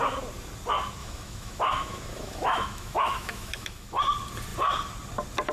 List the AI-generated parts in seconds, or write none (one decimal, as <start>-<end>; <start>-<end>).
1.0-4.0